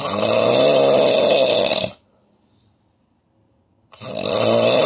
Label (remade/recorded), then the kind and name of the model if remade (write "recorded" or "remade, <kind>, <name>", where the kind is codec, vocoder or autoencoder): recorded